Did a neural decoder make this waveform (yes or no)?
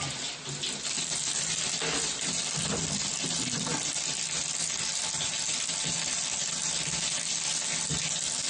no